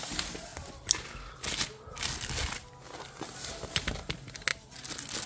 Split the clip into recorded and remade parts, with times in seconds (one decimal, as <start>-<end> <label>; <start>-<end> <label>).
0.0-5.3 recorded